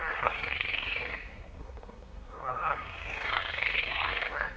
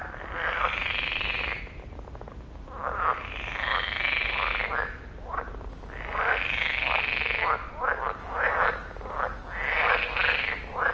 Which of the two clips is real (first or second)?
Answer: second